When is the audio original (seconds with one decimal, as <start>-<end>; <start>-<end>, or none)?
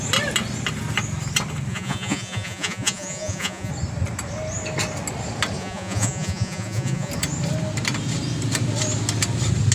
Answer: 0.0-1.7; 3.7-5.6; 7.1-9.7